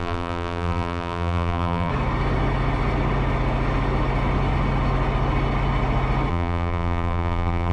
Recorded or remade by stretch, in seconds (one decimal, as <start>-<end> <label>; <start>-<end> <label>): 0.0-1.9 remade; 1.9-6.3 recorded; 6.3-7.7 remade